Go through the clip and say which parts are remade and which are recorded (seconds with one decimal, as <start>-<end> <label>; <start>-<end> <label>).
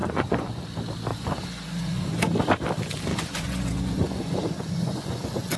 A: 0.0-0.6 remade; 0.6-1.1 recorded; 1.1-2.1 remade; 2.1-3.1 recorded; 3.1-5.6 remade